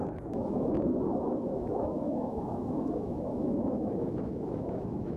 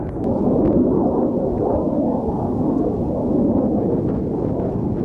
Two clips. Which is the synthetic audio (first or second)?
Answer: first